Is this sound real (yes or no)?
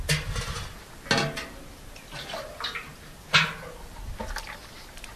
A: yes